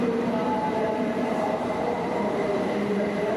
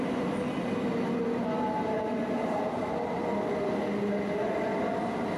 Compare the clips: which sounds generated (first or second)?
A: first